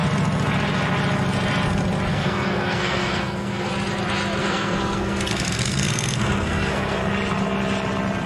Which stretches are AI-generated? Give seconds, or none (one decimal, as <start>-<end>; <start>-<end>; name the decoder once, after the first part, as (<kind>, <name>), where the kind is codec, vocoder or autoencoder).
2.1-3.7 (codec, SNAC); 4.4-7.0